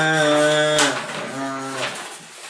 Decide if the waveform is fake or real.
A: real